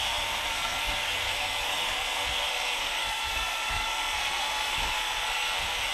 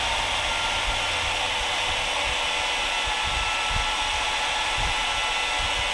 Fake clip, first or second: first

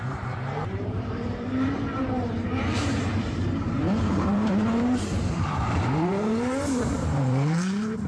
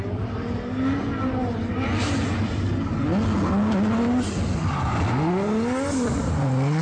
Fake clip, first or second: first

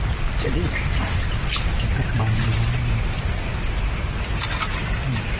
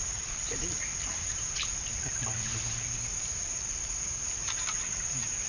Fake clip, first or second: second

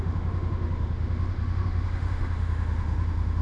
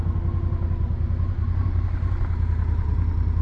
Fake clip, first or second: first